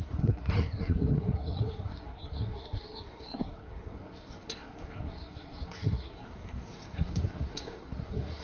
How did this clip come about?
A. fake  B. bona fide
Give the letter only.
A